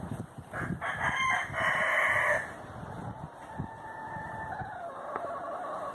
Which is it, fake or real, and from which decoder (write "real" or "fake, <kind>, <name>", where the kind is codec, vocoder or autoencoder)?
real